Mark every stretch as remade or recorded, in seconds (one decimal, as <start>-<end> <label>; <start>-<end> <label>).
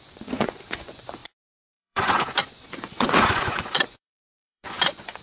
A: 0.0-5.2 remade